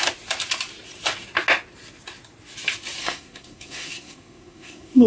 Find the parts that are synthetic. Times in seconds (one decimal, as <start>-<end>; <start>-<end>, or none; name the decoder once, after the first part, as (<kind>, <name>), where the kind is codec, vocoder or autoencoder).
3.0-5.1 (codec, SNAC)